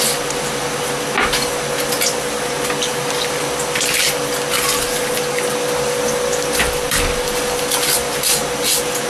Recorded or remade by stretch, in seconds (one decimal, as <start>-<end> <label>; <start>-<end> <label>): 0.0-2.9 recorded; 2.9-8.1 remade; 8.1-9.1 recorded